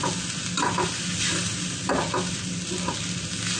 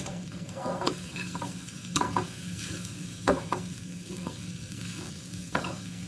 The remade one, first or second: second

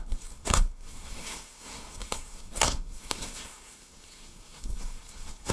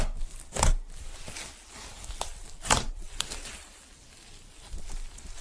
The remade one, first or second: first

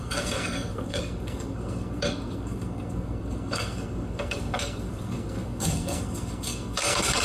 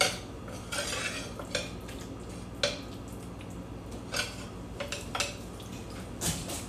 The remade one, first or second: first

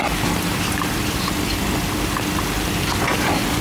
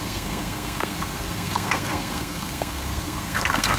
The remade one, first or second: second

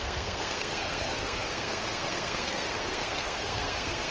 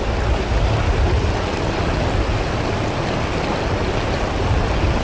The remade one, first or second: first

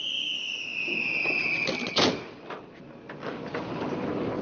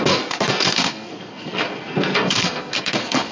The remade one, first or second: second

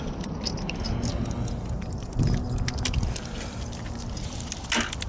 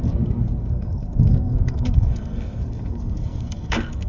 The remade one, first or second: second